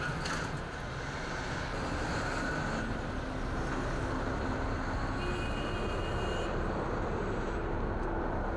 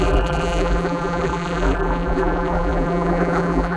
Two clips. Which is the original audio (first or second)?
first